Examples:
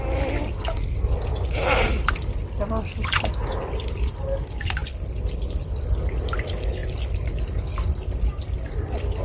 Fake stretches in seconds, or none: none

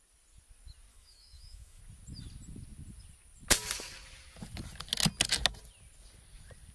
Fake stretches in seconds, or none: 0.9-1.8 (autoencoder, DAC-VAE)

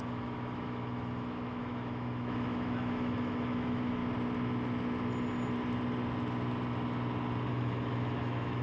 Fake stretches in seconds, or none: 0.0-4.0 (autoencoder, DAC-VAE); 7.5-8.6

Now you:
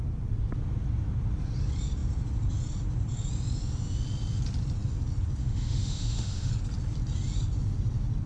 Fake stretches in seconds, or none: 5.4-6.5 (autoencoder, DAC-VAE)

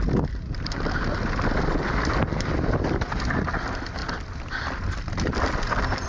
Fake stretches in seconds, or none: none

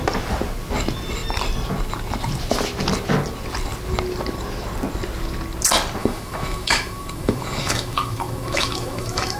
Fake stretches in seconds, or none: 6.0-9.4 (autoencoder, DAC-VAE)